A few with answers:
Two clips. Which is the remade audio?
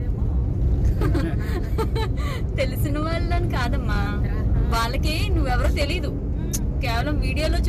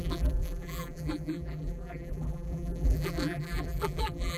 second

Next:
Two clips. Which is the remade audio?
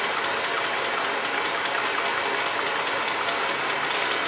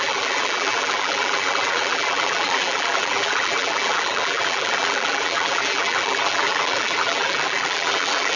second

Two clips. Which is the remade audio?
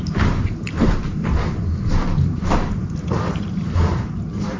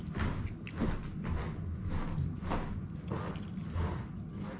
first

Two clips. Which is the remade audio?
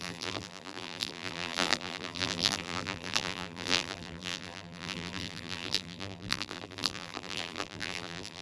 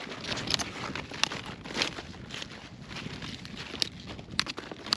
first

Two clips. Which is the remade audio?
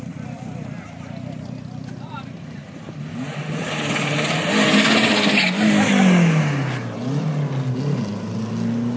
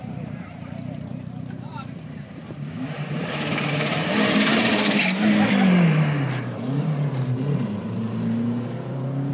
second